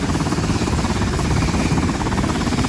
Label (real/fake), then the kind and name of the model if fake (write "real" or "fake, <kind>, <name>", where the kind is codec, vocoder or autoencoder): real